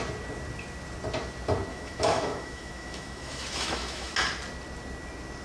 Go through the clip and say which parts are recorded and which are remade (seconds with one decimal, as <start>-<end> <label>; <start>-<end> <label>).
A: 0.0-1.7 recorded; 1.7-4.1 remade; 4.1-5.4 recorded